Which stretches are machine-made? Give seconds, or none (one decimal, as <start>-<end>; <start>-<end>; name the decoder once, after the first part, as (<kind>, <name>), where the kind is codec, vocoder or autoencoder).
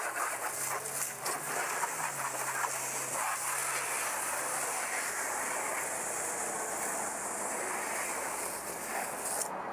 none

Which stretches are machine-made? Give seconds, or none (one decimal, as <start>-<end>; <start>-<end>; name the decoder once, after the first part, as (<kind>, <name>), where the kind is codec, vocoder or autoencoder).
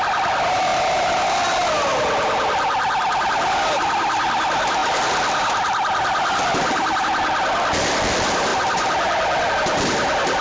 none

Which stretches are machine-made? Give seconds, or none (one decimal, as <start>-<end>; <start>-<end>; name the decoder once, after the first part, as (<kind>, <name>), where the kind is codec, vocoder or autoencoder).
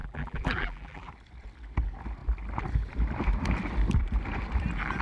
0.0-1.1 (vocoder, BigVGAN v2)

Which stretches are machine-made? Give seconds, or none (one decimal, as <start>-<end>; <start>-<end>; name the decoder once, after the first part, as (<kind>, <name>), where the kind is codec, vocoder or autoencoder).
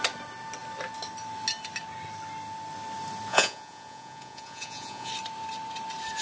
3.3-5.1 (vocoder, Vocos)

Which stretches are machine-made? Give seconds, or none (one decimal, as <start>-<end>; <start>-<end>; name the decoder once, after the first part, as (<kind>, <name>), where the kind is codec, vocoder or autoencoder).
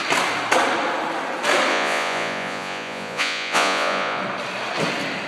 1.7-4.2 (vocoder, Vocos)